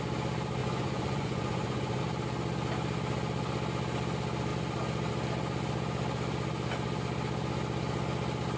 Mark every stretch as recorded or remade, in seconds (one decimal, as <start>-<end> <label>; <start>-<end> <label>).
0.0-0.6 recorded; 0.6-2.0 remade; 2.0-8.6 recorded